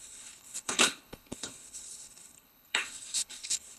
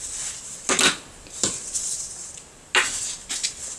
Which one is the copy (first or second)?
first